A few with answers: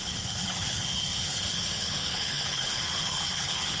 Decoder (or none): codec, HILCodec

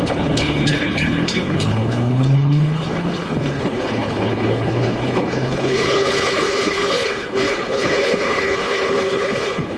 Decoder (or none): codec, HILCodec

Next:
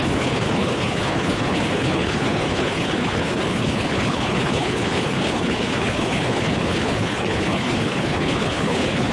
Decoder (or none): codec, HILCodec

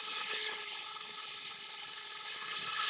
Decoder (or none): codec, HILCodec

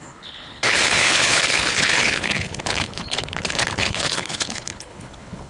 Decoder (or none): codec, HILCodec